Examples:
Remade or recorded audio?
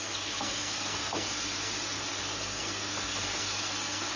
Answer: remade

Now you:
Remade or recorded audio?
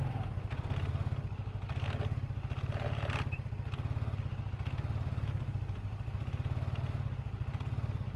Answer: recorded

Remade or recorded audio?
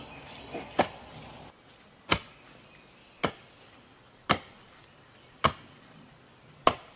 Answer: recorded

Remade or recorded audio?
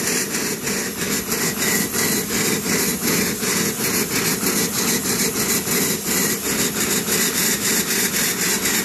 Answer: recorded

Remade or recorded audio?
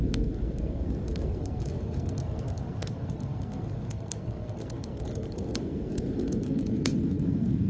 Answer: remade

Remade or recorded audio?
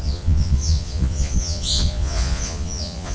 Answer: remade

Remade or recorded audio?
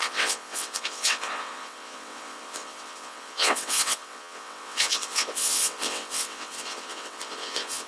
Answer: remade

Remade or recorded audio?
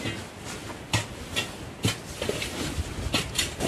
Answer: recorded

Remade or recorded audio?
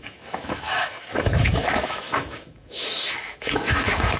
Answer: remade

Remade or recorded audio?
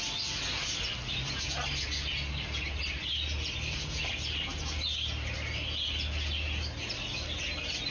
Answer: recorded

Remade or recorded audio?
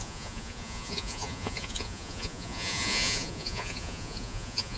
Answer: remade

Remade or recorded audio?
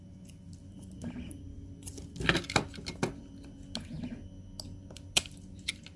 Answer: recorded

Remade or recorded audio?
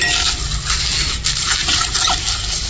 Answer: recorded